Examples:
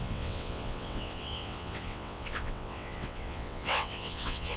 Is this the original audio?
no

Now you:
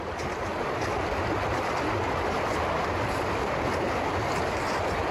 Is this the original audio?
yes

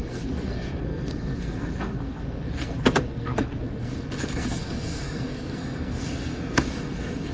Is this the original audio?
no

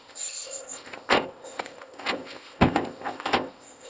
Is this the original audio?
no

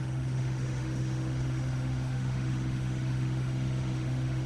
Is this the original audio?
no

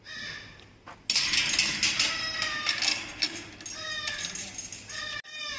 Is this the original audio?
yes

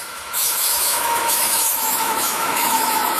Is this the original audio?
no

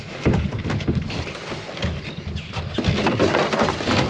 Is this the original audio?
yes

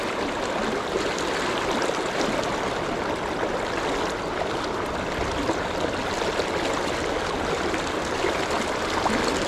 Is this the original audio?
yes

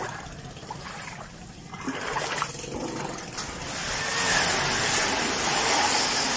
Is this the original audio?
yes